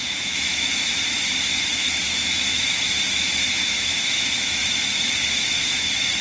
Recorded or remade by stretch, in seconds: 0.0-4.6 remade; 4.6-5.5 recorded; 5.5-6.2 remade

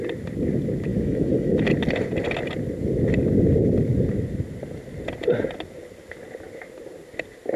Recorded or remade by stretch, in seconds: 0.0-0.9 recorded; 0.9-1.7 remade; 1.7-7.6 recorded

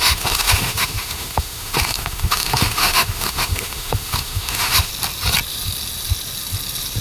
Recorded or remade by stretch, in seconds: 0.0-4.9 remade; 4.9-7.0 recorded